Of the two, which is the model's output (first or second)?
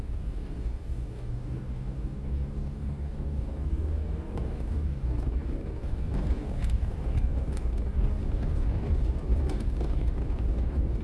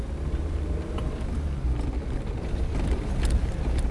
first